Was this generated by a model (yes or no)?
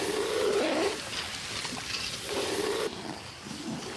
no